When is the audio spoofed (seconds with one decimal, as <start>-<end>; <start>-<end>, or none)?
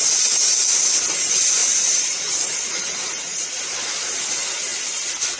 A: 1.6-3.6